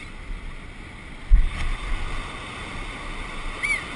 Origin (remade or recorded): recorded